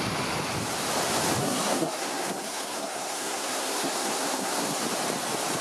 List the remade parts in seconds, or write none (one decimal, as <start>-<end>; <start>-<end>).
1.4-4.8